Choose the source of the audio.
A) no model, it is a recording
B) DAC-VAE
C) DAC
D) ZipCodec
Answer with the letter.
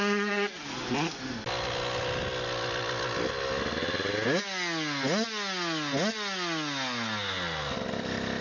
A